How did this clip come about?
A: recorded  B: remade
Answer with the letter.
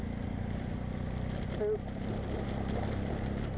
A